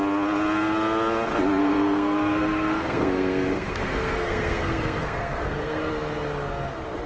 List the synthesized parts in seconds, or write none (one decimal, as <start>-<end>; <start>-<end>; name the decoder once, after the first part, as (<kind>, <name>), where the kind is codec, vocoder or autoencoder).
1.6-5.9 (codec, SNAC)